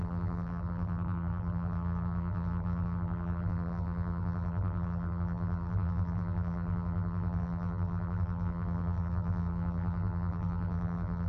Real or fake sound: fake